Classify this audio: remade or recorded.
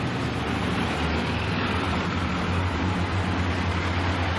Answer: recorded